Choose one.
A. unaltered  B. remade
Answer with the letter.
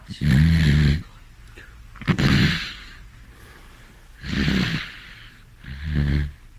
A